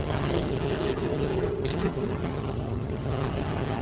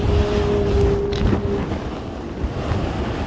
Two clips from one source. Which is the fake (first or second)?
first